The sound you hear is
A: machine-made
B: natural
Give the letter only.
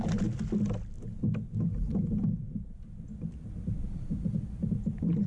B